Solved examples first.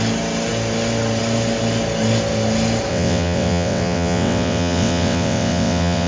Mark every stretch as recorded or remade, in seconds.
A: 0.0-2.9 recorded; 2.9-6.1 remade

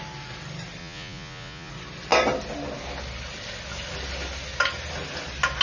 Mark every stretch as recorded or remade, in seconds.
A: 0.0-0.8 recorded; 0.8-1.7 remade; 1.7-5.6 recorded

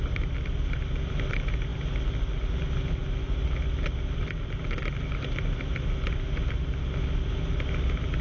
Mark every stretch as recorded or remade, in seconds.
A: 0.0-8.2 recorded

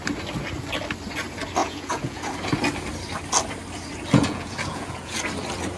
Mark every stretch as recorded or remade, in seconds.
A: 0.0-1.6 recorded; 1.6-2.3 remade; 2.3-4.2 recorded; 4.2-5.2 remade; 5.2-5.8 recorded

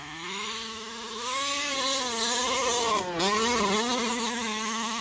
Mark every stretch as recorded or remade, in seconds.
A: 0.0-1.7 remade; 1.7-4.1 recorded; 4.1-5.0 remade

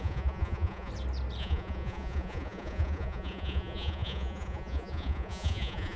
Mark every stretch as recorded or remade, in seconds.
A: 0.0-0.9 remade; 0.9-1.4 recorded; 1.4-6.0 remade